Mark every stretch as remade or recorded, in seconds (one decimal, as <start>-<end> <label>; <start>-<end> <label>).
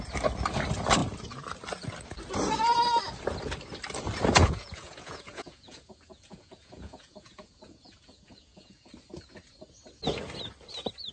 0.0-4.4 recorded; 4.4-8.9 remade; 8.9-11.1 recorded